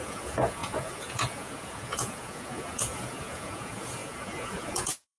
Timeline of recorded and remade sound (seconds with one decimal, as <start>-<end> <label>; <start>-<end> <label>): 0.0-5.2 remade